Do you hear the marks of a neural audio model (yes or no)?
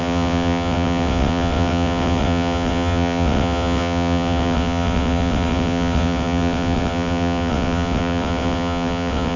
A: yes